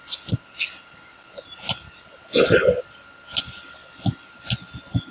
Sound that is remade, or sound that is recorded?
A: recorded